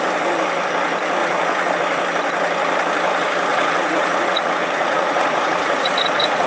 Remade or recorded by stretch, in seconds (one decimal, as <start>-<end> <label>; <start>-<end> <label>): 0.0-1.2 recorded; 1.2-1.7 remade; 1.7-3.5 recorded; 3.5-6.5 remade